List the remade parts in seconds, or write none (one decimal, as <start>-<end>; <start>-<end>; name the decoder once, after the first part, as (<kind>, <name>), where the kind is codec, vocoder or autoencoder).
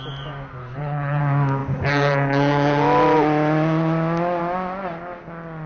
0.6-1.2 (codec, HILCodec)